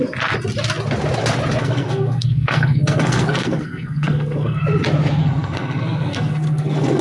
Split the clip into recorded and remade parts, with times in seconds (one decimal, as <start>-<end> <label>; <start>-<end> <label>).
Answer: 0.0-1.6 recorded; 1.6-4.6 remade; 4.6-5.2 recorded; 5.2-7.0 remade